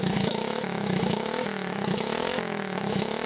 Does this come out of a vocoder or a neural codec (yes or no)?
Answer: yes